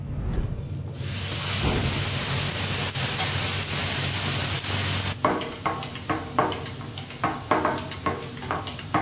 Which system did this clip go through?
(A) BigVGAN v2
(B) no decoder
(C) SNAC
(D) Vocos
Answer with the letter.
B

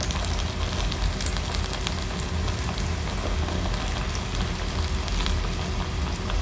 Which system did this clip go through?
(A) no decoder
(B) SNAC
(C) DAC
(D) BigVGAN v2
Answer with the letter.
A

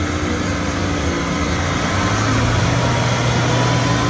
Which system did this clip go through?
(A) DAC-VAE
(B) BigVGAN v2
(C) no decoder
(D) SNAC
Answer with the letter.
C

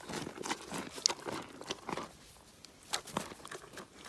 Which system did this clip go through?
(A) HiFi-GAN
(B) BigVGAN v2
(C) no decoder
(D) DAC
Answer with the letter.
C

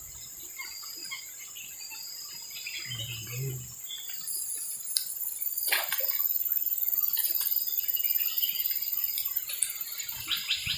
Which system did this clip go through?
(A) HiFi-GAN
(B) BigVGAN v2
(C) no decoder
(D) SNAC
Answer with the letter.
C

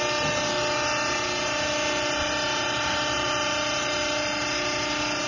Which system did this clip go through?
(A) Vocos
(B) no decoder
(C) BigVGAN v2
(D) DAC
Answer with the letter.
B